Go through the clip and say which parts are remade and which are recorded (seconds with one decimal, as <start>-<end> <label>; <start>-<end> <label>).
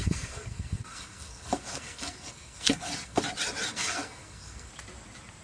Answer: 0.0-3.2 remade; 3.2-3.7 recorded; 3.7-4.7 remade; 4.7-5.4 recorded